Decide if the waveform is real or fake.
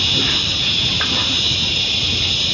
real